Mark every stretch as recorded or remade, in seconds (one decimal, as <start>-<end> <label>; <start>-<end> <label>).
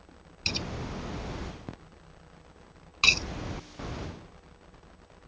0.0-5.3 recorded